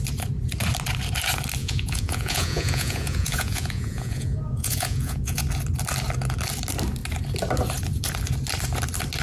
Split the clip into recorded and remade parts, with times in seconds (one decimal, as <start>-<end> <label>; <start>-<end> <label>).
0.0-1.6 recorded; 1.6-5.4 remade; 5.4-9.2 recorded